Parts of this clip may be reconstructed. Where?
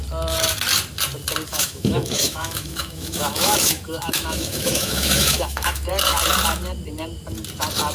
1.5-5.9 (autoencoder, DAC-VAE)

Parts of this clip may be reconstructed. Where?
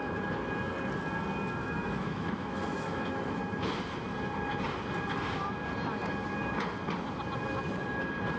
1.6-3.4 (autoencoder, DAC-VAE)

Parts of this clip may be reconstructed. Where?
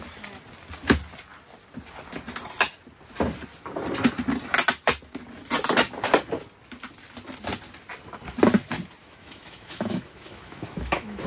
9.0-11.3 (autoencoder, DAC-VAE)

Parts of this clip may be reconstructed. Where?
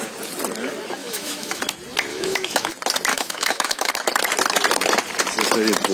1.0-1.6 (autoencoder, DAC-VAE); 2.1-2.7; 3.1-3.9